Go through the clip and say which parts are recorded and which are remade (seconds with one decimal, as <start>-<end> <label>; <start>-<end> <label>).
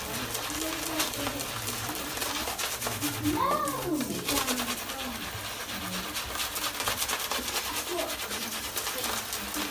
0.0-9.7 recorded